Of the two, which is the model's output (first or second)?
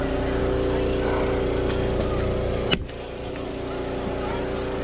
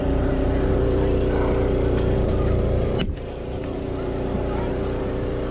second